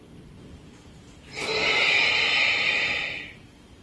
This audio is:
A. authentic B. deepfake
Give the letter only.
A